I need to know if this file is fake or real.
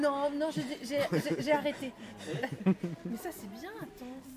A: real